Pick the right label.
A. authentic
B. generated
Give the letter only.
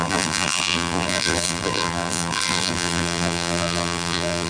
B